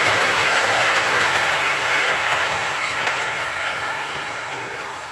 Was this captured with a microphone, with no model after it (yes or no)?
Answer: no